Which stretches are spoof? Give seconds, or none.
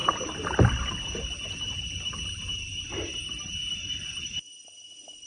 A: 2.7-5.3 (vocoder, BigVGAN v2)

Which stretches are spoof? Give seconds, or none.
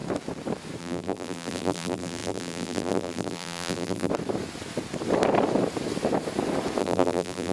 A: 0.8-4.1 (vocoder, BigVGAN v2); 6.8-7.5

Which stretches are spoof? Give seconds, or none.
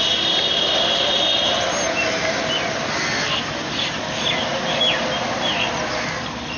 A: none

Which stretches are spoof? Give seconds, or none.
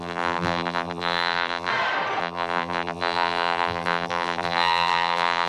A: 0.0-1.7 (vocoder, BigVGAN v2); 2.2-5.5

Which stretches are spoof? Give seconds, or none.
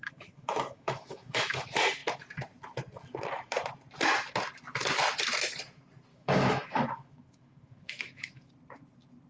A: 0.0-1.6 (autoencoder, DAC-VAE); 6.1-8.5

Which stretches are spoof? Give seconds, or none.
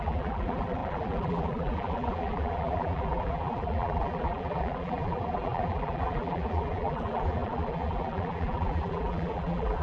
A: 0.0-9.8 (vocoder, BigVGAN v2)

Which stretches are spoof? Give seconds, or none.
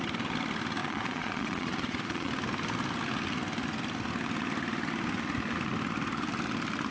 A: 0.8-2.3 (vocoder, Vocos)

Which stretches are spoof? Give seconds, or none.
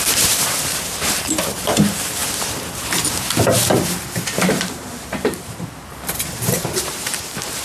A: 0.0-7.6 (vocoder, BigVGAN v2)